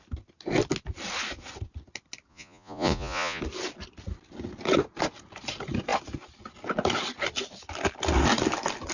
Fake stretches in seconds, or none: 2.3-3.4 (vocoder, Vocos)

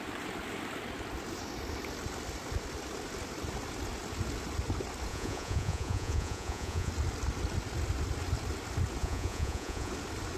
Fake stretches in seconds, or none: 5.1-6.9 (vocoder, Vocos); 9.0-9.9

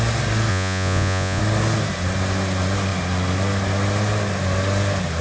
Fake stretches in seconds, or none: 0.5-1.4 (vocoder, Vocos)

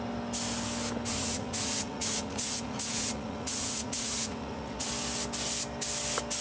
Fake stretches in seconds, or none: 1.1-4.9 (vocoder, Vocos)